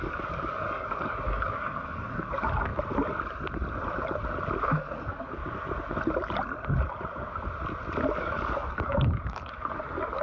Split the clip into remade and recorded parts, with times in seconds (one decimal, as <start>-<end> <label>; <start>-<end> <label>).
0.0-2.7 remade; 2.7-4.6 recorded; 4.6-5.4 remade; 5.4-8.2 recorded; 8.2-10.2 remade